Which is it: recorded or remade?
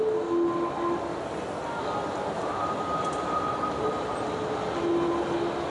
recorded